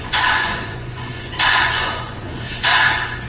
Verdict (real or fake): fake